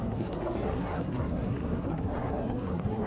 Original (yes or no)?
no